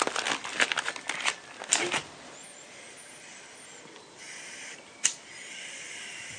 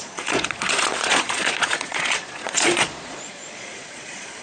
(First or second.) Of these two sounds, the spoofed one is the second